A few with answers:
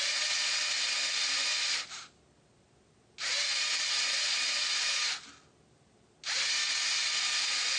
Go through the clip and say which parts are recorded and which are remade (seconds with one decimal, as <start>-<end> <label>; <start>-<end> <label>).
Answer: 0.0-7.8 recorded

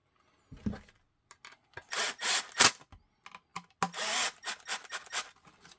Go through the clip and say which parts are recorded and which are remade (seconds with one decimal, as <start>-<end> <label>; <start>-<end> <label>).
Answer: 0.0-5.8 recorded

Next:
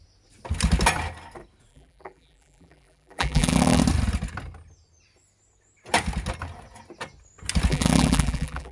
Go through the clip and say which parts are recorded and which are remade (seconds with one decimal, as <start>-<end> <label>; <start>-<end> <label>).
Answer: 0.0-1.7 recorded; 1.7-3.8 remade; 3.8-7.7 recorded; 7.7-8.7 remade

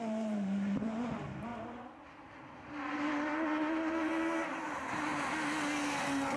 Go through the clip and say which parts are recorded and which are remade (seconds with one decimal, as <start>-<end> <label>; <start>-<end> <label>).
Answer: 0.0-1.5 remade; 1.5-2.9 recorded; 2.9-5.1 remade; 5.1-6.4 recorded